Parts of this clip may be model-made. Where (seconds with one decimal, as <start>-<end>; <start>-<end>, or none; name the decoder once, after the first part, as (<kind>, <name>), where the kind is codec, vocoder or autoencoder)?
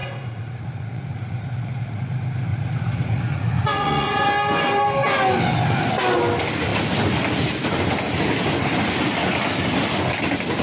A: 0.0-2.0 (vocoder, Vocos); 2.5-4.3